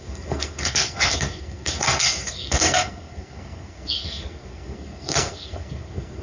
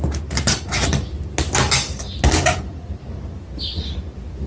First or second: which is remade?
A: first